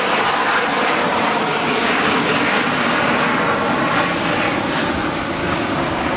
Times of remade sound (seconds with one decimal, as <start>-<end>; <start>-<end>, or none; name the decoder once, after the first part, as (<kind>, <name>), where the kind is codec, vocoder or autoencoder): 1.5-2.3 (codec, DAC); 5.4-6.2